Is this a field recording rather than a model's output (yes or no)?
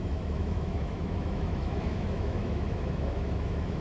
no